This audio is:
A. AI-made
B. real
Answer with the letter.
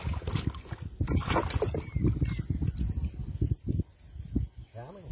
B